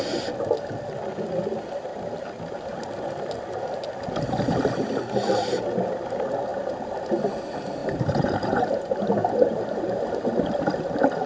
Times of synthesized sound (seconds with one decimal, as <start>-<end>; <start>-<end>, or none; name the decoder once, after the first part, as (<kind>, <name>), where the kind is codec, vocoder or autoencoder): 7.8-10.1 (vocoder, BigVGAN v2)